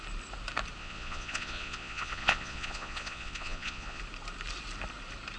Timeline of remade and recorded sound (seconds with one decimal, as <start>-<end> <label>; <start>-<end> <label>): 0.0-0.8 recorded; 0.8-4.0 remade; 4.0-5.4 recorded